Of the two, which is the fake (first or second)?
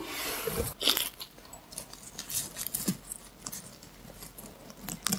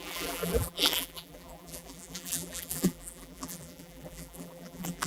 second